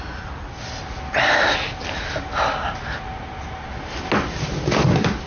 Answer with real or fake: real